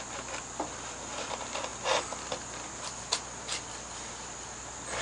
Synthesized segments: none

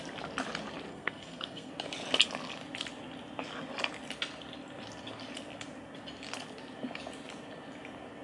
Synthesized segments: 0.9-1.7